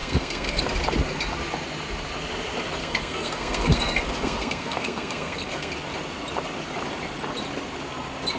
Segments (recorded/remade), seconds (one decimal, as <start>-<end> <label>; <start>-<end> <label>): 0.0-0.6 remade; 0.6-2.8 recorded; 2.8-5.7 remade; 5.7-8.4 recorded